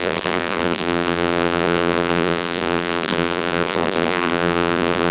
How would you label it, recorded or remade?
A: remade